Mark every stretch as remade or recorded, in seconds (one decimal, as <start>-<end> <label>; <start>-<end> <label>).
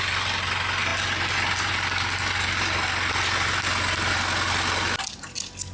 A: 0.0-5.7 recorded